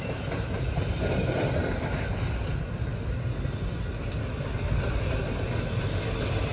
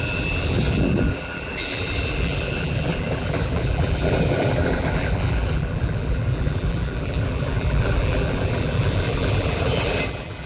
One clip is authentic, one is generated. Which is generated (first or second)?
second